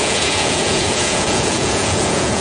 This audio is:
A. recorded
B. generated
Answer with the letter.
B